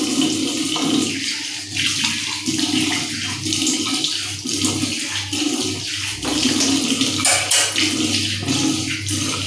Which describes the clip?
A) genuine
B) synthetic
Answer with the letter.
A